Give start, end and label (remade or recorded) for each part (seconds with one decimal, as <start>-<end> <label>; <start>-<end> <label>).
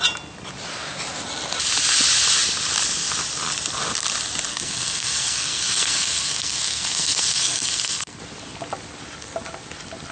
0.0-4.5 recorded; 4.5-8.2 remade; 8.2-10.1 recorded